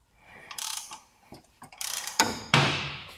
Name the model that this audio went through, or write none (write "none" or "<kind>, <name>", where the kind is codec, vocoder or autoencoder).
vocoder, BigVGAN v2